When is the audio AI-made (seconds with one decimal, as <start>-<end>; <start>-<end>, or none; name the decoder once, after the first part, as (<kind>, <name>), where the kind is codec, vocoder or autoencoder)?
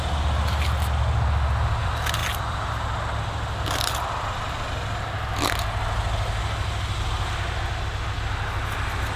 none